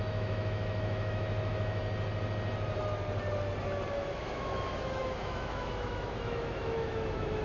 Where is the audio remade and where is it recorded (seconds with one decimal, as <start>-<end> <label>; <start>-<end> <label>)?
0.0-1.8 remade; 1.8-3.9 recorded; 3.9-7.4 remade